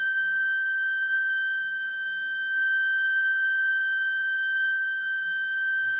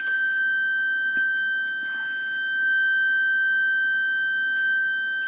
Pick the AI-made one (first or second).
first